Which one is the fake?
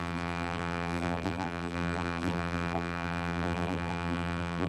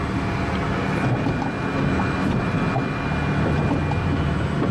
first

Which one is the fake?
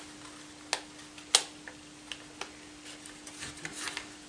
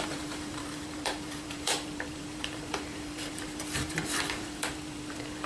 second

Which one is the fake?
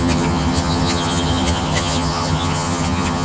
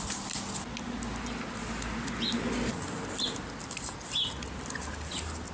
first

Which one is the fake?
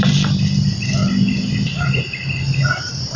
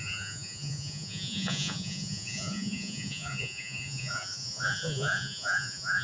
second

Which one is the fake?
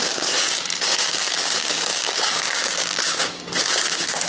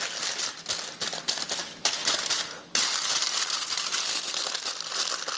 first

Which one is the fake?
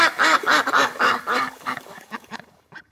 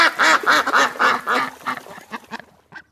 first